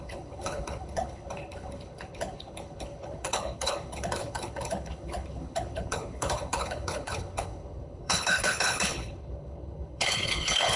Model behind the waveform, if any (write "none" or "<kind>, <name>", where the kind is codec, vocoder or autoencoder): codec, HILCodec